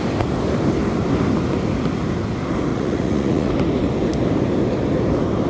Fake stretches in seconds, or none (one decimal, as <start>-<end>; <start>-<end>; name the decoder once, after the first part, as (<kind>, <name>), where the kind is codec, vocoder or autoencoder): 2.7-3.5 (vocoder, Vocos)